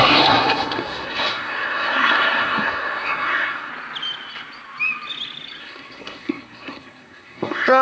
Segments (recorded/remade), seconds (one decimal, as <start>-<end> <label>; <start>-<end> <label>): 0.0-3.7 remade; 3.7-5.6 recorded; 5.6-7.8 remade